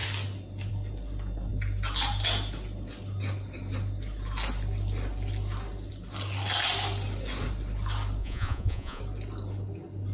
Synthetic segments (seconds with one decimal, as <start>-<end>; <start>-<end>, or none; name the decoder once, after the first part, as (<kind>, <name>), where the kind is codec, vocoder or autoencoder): 8.2-9.0 (vocoder, Vocos)